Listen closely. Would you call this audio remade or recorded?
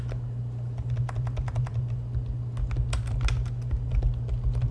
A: recorded